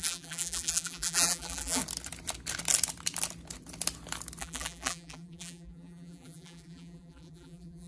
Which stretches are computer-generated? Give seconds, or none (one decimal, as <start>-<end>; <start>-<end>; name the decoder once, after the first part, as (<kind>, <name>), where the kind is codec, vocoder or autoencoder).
0.0-1.8 (vocoder, BigVGAN v2); 4.4-7.9